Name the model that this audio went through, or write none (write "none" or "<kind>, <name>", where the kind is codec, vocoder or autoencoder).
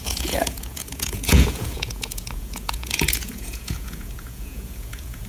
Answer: vocoder, Vocos